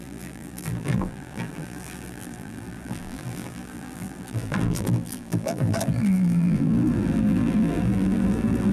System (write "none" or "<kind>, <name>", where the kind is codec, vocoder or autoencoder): vocoder, BigVGAN v2